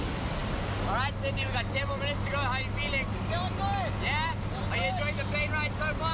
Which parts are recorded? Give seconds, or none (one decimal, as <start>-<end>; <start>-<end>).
0.0-6.1